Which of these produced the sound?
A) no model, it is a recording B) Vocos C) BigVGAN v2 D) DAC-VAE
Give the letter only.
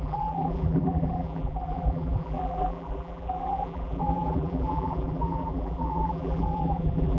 C